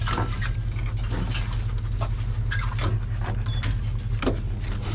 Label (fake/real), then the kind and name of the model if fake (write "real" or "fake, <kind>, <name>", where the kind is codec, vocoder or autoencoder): real